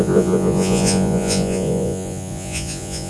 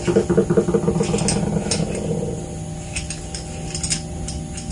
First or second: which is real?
second